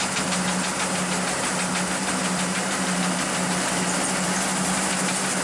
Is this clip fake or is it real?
real